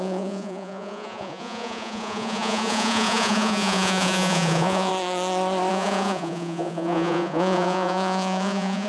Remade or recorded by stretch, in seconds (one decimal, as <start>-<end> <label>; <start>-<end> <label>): 0.0-4.9 remade; 4.9-5.7 recorded; 5.7-8.9 remade